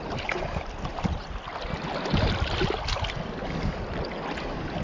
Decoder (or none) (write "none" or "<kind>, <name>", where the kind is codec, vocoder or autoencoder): none